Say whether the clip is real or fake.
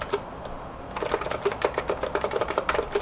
real